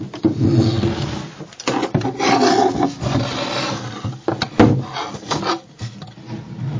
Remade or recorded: recorded